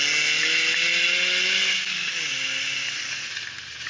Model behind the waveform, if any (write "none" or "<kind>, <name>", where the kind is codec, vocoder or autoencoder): none